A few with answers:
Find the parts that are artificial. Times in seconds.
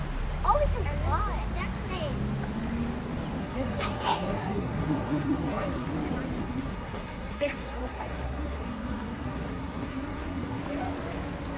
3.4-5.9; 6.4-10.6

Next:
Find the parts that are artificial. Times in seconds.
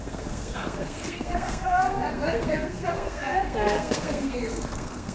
0.0-5.1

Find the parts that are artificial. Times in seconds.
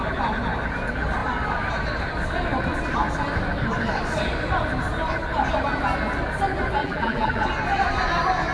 6.8-7.4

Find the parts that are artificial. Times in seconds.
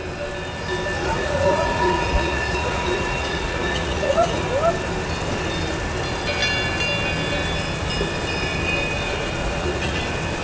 1.0-4.4; 9.4-10.0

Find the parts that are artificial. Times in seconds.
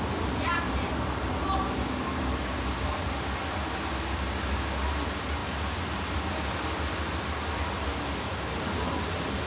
none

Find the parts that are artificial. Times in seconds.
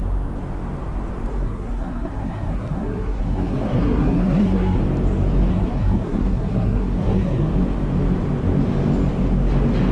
1.3-4.8; 5.5-7.5